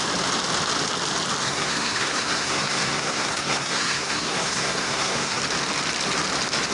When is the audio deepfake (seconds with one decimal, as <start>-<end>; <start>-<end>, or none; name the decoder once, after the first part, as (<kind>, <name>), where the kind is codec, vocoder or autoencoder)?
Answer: 1.4-5.4 (codec, SNAC)